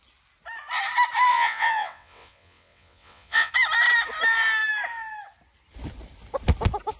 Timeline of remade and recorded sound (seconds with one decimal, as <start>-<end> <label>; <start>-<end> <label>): 0.0-1.3 recorded; 1.3-3.5 remade; 3.5-7.0 recorded